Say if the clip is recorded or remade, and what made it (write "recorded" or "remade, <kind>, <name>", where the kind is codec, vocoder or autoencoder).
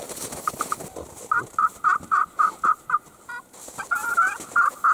recorded